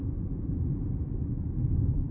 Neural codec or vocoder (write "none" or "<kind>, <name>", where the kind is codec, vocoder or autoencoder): none